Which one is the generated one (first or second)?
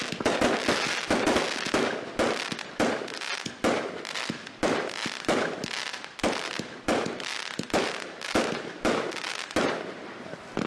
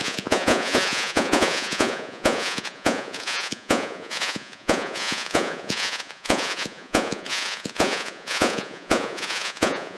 second